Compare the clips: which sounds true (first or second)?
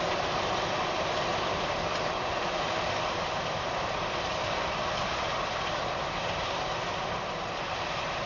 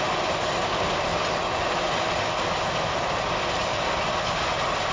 second